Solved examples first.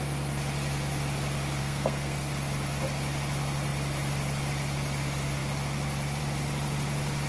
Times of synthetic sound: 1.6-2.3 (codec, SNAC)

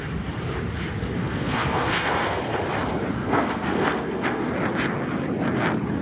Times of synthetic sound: 1.2-2.4 (codec, SNAC); 3.2-4.5

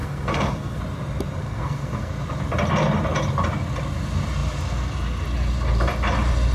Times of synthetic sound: 0.0-0.8 (codec, SNAC); 1.4-2.1